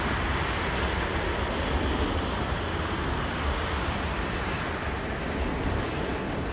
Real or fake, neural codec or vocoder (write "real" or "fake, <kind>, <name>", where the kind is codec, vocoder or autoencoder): real